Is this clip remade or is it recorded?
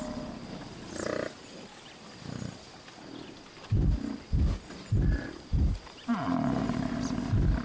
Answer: recorded